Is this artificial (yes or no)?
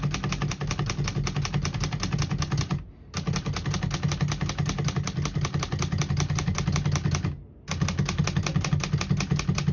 no